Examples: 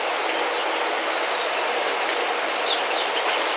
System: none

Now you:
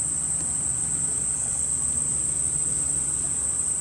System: vocoder, BigVGAN v2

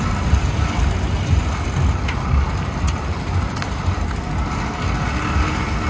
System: none